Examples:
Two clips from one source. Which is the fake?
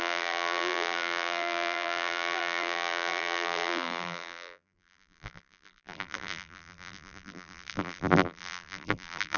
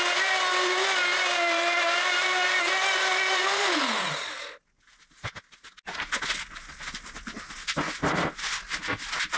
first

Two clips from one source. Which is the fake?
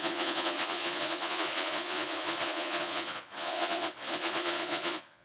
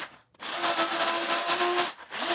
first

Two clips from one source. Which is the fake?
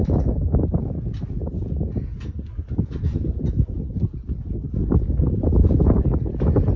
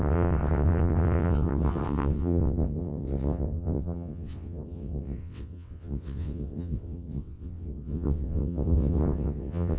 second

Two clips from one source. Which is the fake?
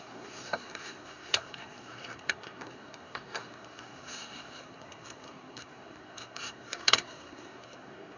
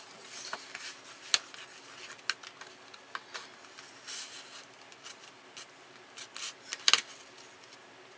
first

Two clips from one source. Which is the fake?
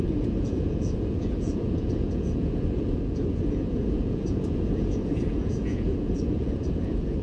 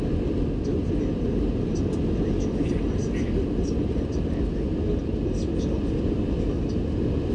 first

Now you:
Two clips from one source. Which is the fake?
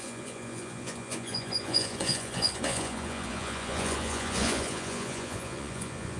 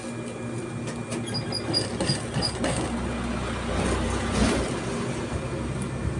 first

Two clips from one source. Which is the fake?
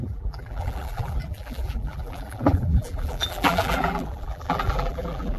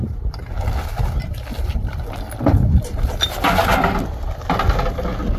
first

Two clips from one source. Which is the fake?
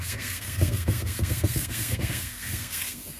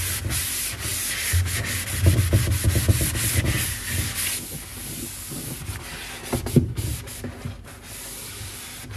first